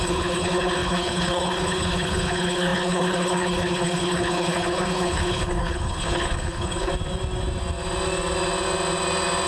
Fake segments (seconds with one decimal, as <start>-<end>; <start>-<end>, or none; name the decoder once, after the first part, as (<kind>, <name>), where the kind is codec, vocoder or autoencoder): 0.0-6.9 (codec, HILCodec)